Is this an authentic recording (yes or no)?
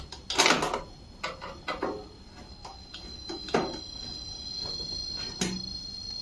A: yes